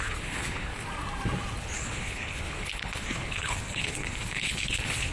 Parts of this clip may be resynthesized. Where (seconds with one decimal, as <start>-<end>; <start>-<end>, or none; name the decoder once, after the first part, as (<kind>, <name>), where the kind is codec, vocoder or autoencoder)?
0.0-0.7 (codec, HILCodec); 1.6-5.1